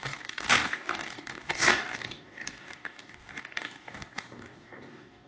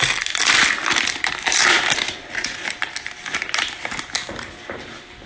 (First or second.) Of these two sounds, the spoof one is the first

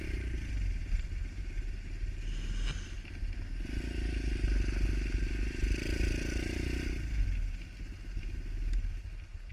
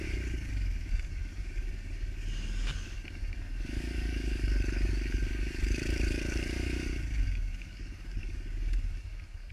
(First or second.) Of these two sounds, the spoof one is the second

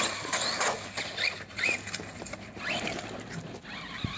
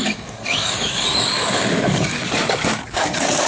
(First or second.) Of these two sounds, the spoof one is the second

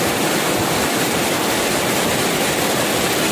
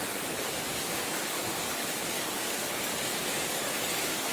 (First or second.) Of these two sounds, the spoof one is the second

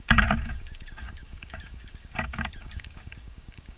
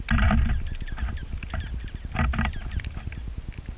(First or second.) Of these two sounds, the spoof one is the first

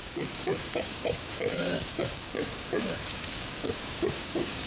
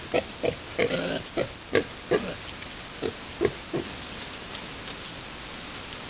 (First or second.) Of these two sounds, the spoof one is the first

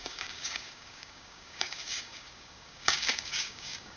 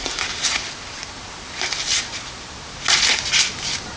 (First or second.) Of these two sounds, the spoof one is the first